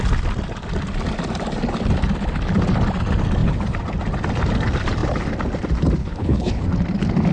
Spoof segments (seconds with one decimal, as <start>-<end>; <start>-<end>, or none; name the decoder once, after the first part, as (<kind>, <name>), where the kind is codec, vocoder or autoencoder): 6.0-6.6 (codec, HILCodec)